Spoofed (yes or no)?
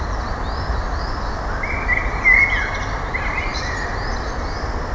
no